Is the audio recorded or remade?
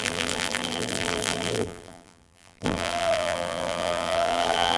remade